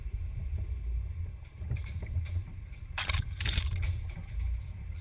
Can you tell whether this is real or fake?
fake